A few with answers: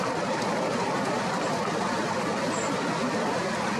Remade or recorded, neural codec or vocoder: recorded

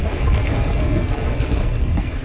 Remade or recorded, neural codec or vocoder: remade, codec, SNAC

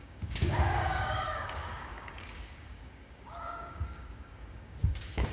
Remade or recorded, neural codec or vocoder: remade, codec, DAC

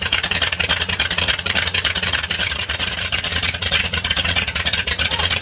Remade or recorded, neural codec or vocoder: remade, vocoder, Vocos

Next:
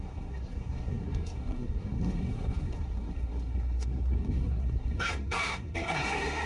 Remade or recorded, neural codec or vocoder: remade, codec, SNAC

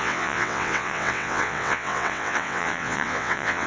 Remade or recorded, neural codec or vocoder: remade, vocoder, WaveNeXt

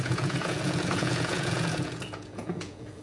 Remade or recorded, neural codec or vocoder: remade, vocoder, Vocos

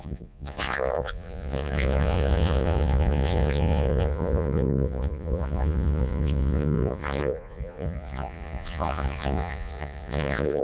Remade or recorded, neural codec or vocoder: remade, vocoder, Vocos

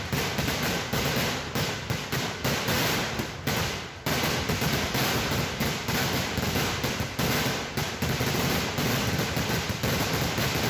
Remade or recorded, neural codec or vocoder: recorded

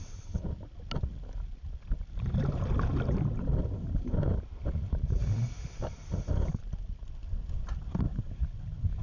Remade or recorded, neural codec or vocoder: recorded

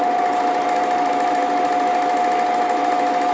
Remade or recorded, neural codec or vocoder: recorded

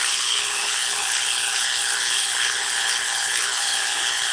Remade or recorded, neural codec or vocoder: remade, codec, HILCodec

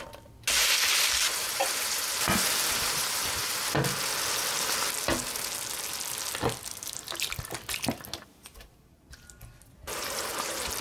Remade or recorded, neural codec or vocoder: recorded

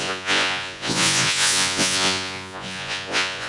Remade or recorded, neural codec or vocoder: remade, vocoder, Vocos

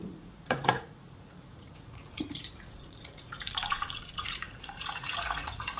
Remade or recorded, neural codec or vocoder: remade, vocoder, Vocos